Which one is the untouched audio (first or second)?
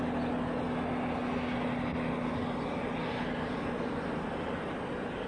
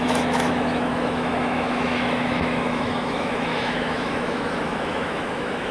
first